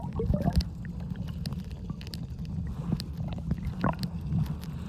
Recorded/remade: recorded